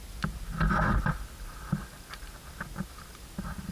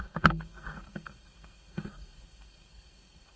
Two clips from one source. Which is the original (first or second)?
first